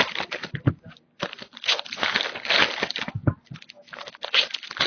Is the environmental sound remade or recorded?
recorded